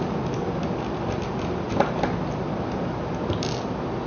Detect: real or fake real